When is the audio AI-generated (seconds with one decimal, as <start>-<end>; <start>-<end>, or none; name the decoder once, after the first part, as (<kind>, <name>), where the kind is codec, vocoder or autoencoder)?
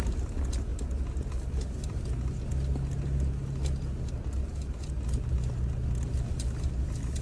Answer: none